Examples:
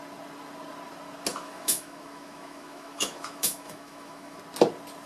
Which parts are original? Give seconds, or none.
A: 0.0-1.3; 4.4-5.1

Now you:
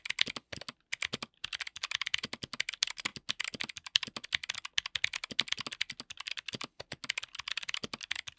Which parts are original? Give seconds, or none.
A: 0.0-8.4

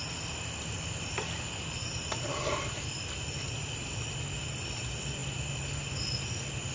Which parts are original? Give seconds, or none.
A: 4.0-5.2; 5.8-6.7

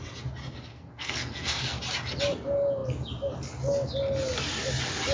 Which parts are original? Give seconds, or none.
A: 0.0-0.7; 1.8-5.1